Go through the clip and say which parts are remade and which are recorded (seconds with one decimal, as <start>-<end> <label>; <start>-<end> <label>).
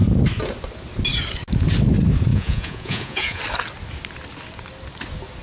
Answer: 0.0-2.3 recorded; 2.3-3.4 remade; 3.4-5.4 recorded